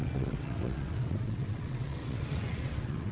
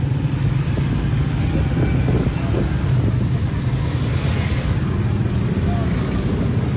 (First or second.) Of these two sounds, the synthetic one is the first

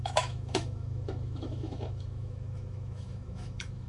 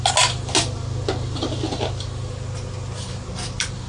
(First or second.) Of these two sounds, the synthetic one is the first